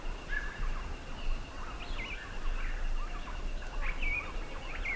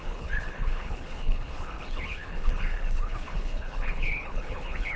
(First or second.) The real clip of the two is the first